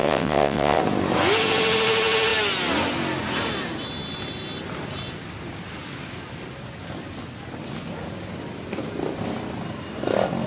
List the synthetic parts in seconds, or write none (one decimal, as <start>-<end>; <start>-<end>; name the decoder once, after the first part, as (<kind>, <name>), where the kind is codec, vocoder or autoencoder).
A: 0.0-0.8 (vocoder, WaveNeXt)